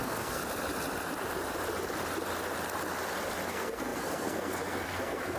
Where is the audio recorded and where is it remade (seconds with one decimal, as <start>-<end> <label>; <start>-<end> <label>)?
0.0-0.4 remade; 0.4-3.5 recorded; 3.5-5.4 remade